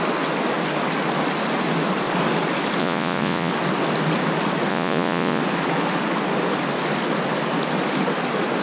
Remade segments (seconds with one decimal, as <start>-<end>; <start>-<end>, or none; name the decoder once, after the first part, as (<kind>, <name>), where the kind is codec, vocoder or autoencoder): 2.8-3.5 (vocoder, Vocos); 4.7-5.4